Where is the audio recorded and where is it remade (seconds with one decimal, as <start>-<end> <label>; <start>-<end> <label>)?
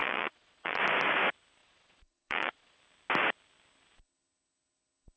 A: 0.0-0.8 remade; 0.8-1.6 recorded; 1.6-2.8 remade; 2.8-5.2 recorded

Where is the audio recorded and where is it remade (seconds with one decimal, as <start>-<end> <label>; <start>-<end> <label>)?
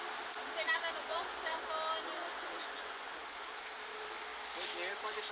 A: 0.0-1.0 recorded; 1.0-1.6 remade; 1.6-2.2 recorded; 2.2-3.2 remade; 3.2-5.3 recorded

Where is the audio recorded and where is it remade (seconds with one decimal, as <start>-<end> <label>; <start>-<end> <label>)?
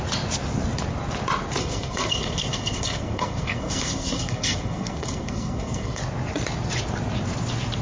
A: 0.0-1.6 recorded; 1.6-6.0 remade; 6.0-7.8 recorded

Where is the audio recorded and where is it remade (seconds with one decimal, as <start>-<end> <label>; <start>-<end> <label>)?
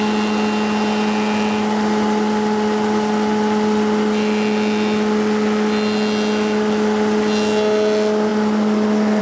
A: 0.0-9.2 recorded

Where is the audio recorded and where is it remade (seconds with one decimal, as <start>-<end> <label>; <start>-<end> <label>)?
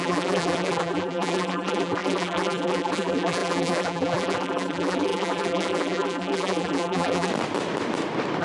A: 0.0-7.3 remade; 7.3-8.4 recorded